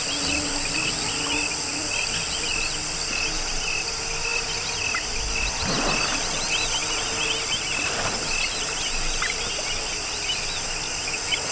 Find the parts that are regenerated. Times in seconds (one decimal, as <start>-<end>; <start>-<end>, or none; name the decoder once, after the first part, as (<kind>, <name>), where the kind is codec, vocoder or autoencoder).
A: none